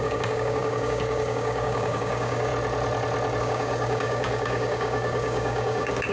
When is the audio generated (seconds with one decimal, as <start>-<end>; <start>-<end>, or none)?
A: 0.0-2.5; 3.4-6.1